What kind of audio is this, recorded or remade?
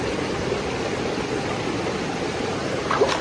recorded